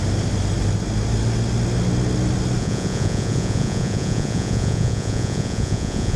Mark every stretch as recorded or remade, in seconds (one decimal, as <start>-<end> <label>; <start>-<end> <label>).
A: 0.0-2.6 recorded; 2.6-6.2 remade